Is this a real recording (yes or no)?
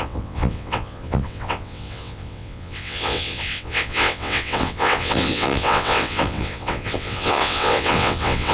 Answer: no